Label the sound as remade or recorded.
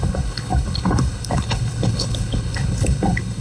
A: remade